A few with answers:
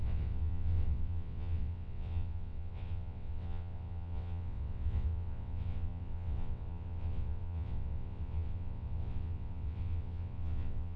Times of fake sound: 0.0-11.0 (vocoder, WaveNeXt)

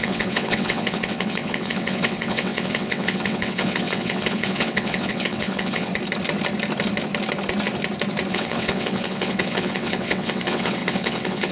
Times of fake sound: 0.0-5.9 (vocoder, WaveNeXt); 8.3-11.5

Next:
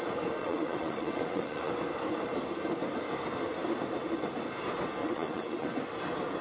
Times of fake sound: 0.4-1.7 (vocoder, WaveNeXt); 5.0-5.8

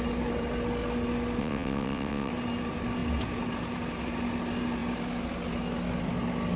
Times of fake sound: 1.4-2.3 (vocoder, WaveNeXt)

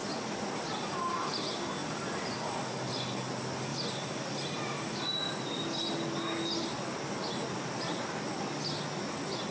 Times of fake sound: none

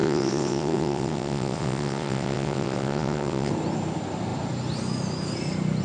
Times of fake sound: 0.0-3.5 (vocoder, WaveNeXt)